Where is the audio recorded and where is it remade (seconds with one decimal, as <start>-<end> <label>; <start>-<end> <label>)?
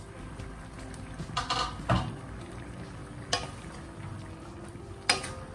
0.0-5.5 recorded